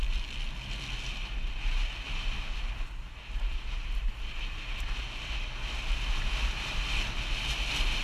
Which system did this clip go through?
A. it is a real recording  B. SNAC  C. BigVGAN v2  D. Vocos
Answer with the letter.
A